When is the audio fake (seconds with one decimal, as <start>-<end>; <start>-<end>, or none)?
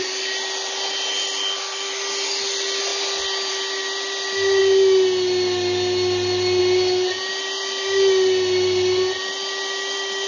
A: none